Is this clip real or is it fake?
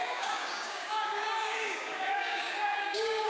fake